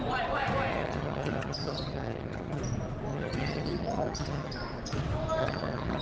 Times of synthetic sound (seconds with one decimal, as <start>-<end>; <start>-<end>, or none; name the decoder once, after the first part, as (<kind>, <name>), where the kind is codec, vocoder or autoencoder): 0.7-2.6 (vocoder, HiFi-GAN); 3.1-4.5; 5.4-6.0